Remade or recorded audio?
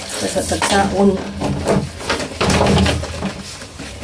recorded